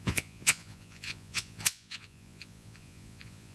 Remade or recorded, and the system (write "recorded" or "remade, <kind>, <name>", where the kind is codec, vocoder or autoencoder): remade, vocoder, Vocos